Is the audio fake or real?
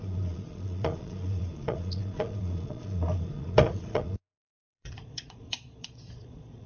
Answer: fake